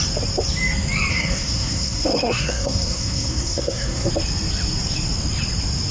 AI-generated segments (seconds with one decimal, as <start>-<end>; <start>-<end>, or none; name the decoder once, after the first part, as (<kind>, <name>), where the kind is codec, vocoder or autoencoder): 1.1-4.1 (codec, SNAC)